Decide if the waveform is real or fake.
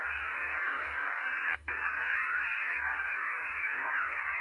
fake